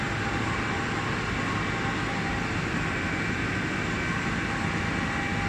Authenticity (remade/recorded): recorded